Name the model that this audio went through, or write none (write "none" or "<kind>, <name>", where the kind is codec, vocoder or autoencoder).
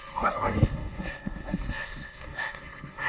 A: codec, SNAC